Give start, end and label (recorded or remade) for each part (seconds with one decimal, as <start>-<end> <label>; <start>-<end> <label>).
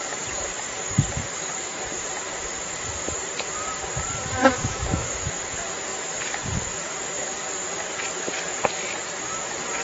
0.0-4.4 recorded; 4.4-5.3 remade; 5.3-9.8 recorded